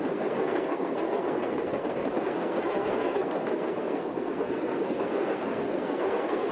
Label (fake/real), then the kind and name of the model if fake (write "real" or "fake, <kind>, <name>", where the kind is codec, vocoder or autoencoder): fake, codec, SNAC